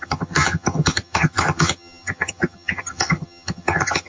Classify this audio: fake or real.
fake